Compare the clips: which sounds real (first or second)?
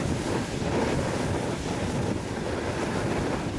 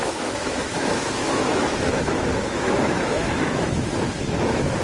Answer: first